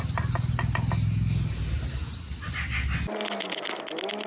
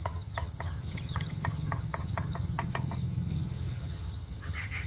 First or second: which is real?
first